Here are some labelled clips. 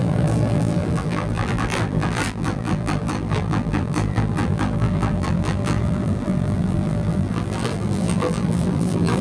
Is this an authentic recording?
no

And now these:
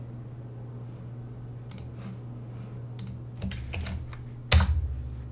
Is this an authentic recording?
yes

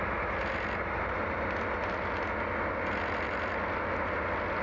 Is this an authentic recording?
yes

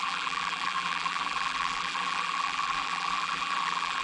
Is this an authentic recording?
no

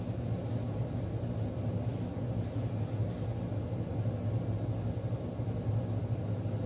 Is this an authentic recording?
yes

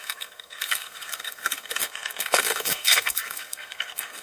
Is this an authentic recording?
no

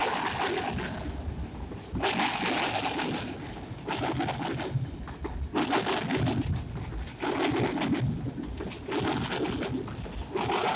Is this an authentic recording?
yes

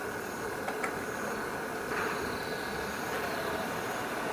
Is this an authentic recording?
yes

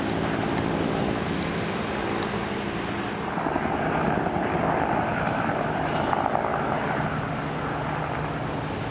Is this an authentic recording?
yes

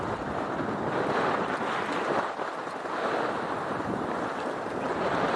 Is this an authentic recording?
yes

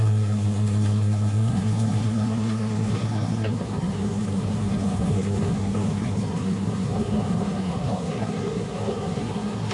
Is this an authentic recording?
no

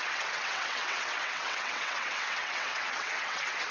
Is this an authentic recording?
no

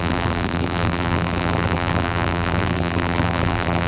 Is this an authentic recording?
no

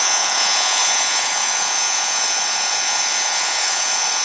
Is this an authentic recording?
no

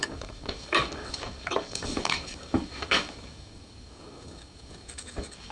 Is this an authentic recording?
no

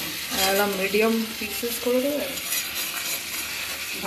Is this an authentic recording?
yes